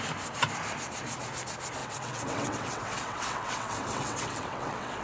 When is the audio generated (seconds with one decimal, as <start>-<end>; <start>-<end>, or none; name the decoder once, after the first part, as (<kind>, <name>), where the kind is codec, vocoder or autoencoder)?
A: 1.8-5.0 (vocoder, WaveNeXt)